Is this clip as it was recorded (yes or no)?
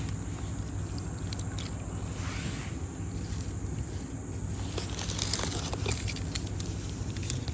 yes